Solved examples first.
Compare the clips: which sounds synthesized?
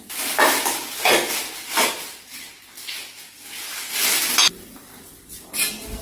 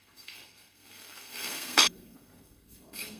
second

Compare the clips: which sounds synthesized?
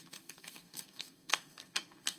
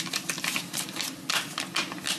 first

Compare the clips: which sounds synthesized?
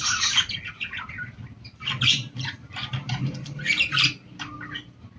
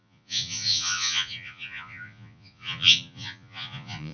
second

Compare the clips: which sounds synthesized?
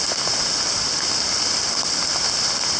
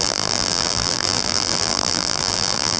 second